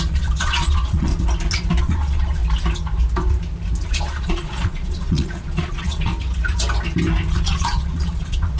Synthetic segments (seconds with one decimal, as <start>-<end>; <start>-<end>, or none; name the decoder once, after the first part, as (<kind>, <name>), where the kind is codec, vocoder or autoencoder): 0.0-1.1 (vocoder, Vocos); 1.8-2.4; 3.9-6.1; 7.3-8.6